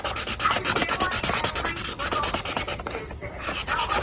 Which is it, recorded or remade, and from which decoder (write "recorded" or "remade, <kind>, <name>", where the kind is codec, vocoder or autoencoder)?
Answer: recorded